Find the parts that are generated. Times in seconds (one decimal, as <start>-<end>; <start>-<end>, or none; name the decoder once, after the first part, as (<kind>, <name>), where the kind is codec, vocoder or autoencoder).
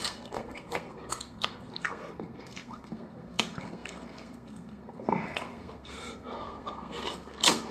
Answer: 0.0-7.7 (codec, SNAC)